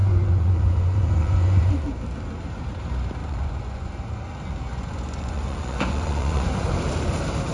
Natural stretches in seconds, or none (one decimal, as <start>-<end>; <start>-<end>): 1.7-3.2; 3.9-4.7; 6.5-7.5